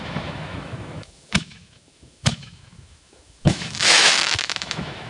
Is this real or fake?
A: fake